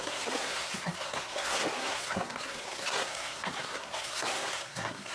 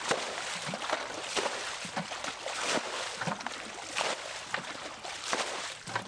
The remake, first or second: first